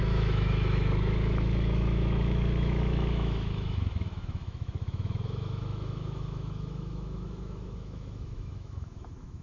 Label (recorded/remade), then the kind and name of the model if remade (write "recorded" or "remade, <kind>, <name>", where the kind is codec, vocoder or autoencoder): remade, autoencoder, DAC-VAE